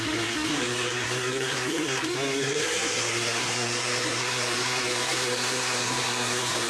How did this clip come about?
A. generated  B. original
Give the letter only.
A